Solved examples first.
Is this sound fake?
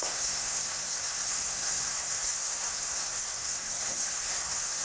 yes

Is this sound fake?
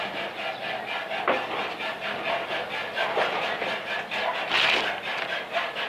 no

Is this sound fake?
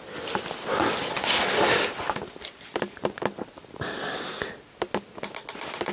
no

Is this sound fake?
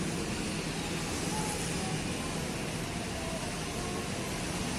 no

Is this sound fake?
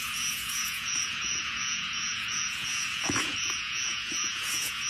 yes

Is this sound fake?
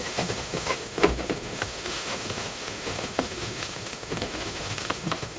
yes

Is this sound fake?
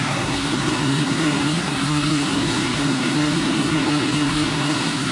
yes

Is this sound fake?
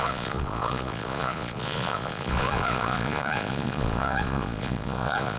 yes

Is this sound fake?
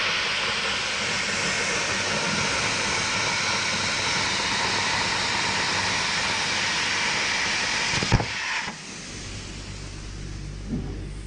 no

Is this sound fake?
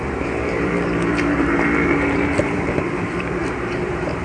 yes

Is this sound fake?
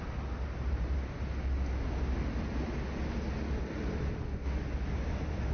no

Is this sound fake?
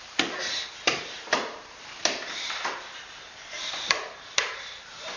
yes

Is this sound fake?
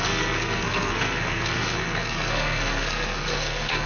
yes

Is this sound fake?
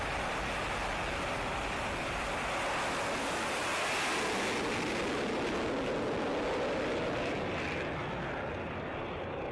no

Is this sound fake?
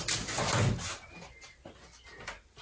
no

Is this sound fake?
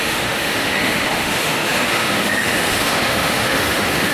yes